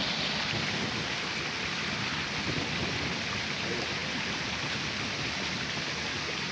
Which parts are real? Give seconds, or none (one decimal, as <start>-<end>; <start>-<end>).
0.0-6.5